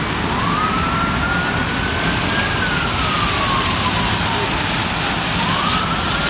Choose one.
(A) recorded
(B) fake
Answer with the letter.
A